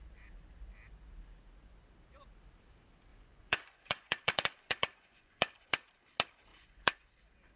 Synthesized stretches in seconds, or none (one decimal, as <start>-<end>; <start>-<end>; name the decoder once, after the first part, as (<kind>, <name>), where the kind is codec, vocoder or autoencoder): 3.1-5.7 (vocoder, Vocos); 6.5-7.1